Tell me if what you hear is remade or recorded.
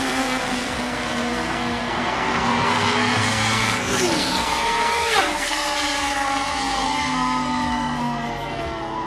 remade